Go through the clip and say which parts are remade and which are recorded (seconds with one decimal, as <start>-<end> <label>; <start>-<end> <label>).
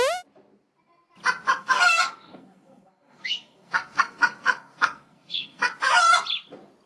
0.0-1.6 recorded; 1.6-5.7 remade; 5.7-6.9 recorded